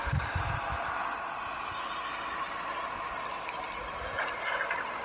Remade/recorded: recorded